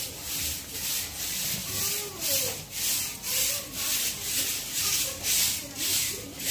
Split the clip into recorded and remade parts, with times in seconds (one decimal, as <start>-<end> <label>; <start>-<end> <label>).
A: 0.0-6.5 recorded